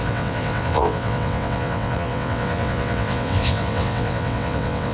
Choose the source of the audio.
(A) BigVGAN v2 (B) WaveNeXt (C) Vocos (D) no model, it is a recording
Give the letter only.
B